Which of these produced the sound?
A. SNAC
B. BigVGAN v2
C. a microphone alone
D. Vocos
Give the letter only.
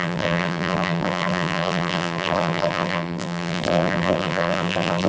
B